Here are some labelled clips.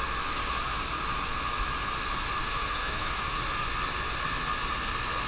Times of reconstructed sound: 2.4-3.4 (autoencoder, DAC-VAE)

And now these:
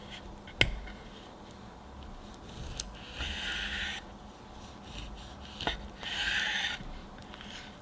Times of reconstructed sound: none

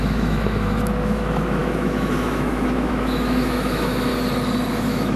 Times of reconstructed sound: 0.0-4.1 (autoencoder, DAC-VAE); 4.7-5.2

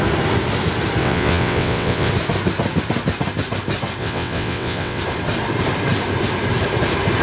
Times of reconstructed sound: 1.0-2.1 (vocoder, WaveNeXt); 4.0-5.0

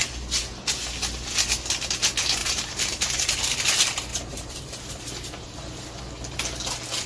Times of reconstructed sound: 2.4-3.3 (vocoder, BigVGAN v2); 4.1-6.0